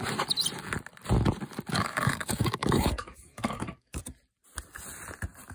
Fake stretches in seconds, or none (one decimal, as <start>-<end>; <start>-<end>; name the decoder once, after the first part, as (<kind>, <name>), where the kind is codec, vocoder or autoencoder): 1.7-4.0 (codec, DAC)